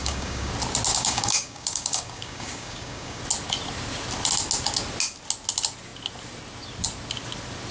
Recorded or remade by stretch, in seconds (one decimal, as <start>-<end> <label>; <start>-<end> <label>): 0.0-0.5 remade; 0.5-0.9 recorded; 0.9-3.2 remade; 3.2-7.7 recorded